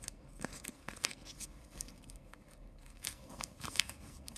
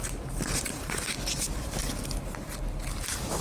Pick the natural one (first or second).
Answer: second